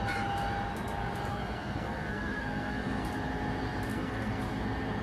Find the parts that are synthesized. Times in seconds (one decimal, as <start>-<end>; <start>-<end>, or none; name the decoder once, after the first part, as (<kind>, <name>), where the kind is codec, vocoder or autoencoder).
1.3-3.1 (codec, SNAC); 3.9-4.4